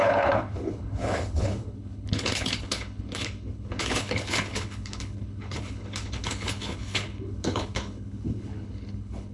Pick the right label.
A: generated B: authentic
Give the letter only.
A